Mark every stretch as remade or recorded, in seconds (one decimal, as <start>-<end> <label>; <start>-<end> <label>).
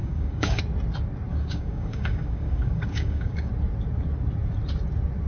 0.0-0.6 remade; 0.6-1.3 recorded; 1.3-3.5 remade; 3.5-5.3 recorded